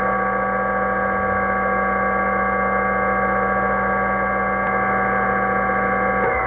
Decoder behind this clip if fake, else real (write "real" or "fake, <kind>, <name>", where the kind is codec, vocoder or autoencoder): real